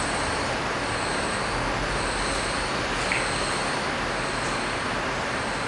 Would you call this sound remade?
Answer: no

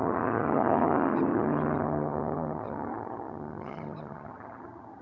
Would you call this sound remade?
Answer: yes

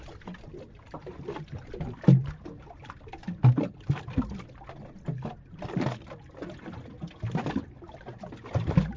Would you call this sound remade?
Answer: no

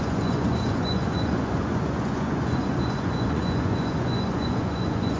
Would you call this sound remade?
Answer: yes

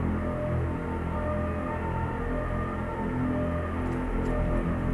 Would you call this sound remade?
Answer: no